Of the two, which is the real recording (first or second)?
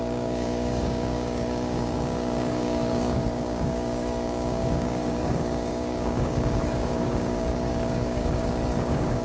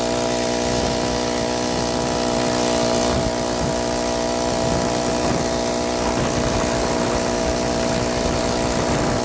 second